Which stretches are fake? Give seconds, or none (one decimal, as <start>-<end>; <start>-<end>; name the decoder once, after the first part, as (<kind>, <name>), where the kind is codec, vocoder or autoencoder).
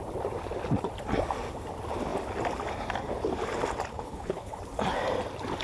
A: 3.9-4.6 (codec, HILCodec)